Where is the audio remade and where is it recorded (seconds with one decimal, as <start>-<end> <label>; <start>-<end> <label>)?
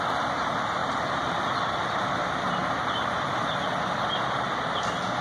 0.0-0.8 recorded; 0.8-1.8 remade; 1.8-5.2 recorded